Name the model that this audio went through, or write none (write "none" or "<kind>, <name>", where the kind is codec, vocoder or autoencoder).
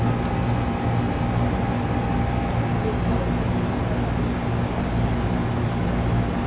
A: none